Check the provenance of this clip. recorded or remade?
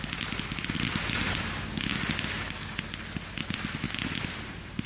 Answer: recorded